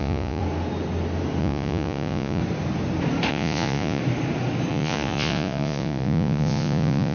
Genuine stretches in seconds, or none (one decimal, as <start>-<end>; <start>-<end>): 0.4-1.4; 2.4-3.3; 4.0-4.7